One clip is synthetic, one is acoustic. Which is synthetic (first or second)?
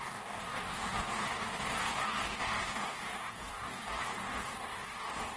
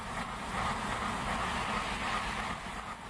first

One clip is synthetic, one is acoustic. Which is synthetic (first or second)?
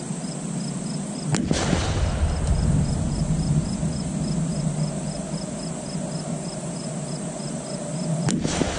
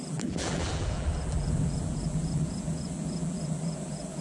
second